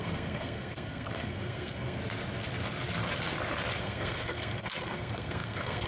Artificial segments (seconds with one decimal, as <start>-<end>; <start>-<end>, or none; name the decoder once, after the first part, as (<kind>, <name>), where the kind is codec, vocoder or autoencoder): 0.0-2.0 (codec, SNAC); 3.8-5.9